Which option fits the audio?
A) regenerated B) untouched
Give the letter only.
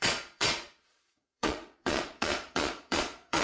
A